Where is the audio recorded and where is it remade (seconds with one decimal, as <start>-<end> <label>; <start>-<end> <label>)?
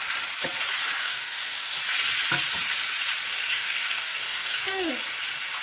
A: 0.0-1.0 recorded; 1.0-1.7 remade; 1.7-3.5 recorded; 3.5-4.9 remade; 4.9-5.6 recorded